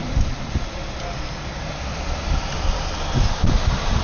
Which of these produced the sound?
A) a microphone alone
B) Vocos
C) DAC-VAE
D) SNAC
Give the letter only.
A